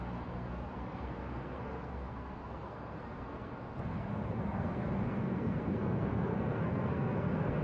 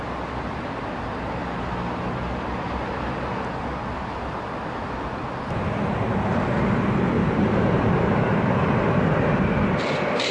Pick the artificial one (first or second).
first